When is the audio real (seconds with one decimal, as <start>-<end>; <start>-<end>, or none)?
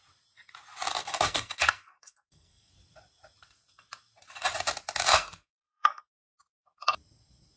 0.0-1.0; 2.7-5.1; 6.0-7.6